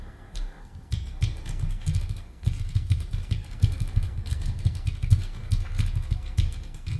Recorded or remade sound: remade